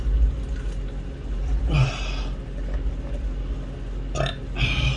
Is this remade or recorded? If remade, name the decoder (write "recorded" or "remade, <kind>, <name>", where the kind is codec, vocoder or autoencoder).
recorded